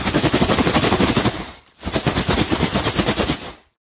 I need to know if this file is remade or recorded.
recorded